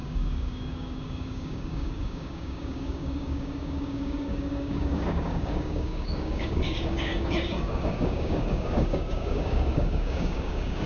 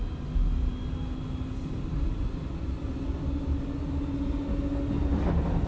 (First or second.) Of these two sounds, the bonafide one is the second